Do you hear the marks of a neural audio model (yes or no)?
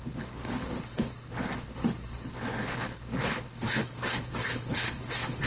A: yes